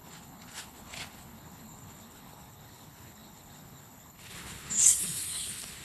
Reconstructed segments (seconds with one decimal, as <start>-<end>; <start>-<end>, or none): 0.0-5.8